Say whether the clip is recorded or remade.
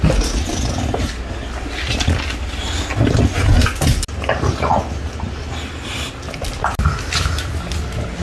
recorded